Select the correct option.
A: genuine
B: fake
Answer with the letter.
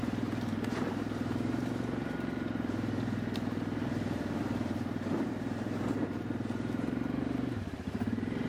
B